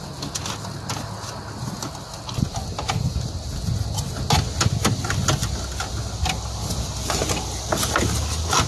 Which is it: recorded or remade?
recorded